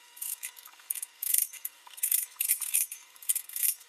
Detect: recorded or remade remade